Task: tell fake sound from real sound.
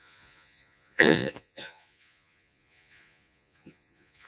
fake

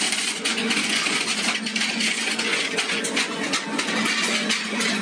fake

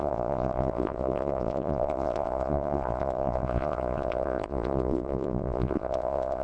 fake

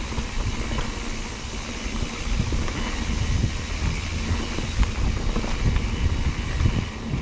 real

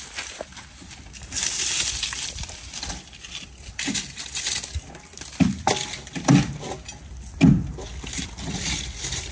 real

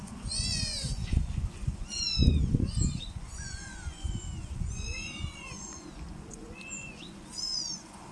fake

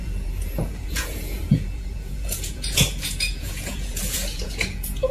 fake